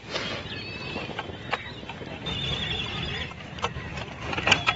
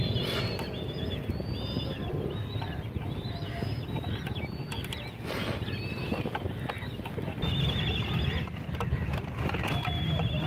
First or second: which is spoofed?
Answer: first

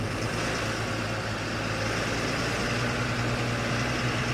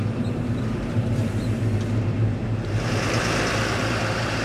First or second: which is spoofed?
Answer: second